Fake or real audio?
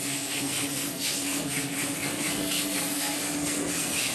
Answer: fake